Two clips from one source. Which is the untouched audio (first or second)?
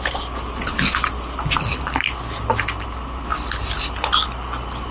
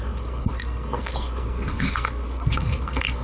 first